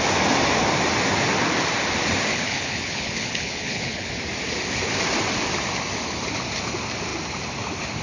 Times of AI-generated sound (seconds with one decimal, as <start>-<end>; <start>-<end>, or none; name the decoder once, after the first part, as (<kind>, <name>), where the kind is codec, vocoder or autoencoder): 2.3-4.1 (codec, HILCodec)